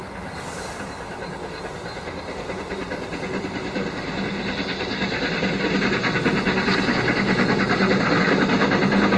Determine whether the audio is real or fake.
real